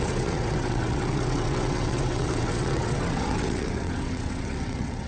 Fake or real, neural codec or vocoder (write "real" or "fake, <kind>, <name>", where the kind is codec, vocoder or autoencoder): fake, vocoder, WaveNeXt